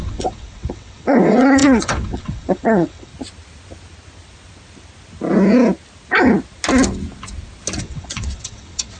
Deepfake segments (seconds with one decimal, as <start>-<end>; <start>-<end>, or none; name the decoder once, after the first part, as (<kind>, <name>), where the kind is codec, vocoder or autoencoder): 0.0-3.1 (vocoder, WaveNeXt); 7.8-9.0